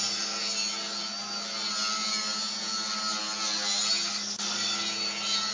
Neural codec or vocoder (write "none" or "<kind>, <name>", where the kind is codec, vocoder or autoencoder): none